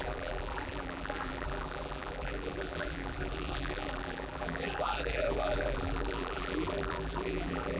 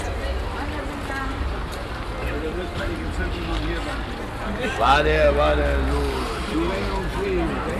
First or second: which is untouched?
second